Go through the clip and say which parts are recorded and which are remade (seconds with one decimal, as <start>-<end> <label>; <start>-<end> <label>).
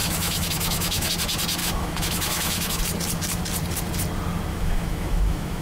0.0-1.1 remade; 1.1-1.6 recorded; 1.6-2.8 remade; 2.8-4.5 recorded; 4.5-5.6 remade